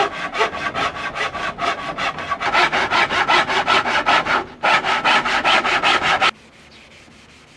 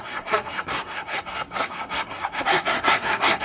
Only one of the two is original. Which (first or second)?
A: first